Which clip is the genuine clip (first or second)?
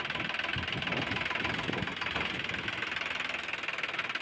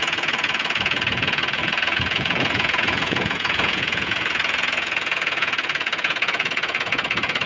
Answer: first